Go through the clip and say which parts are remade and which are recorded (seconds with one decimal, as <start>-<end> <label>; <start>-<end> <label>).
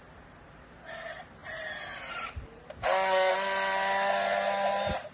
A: 0.0-5.1 recorded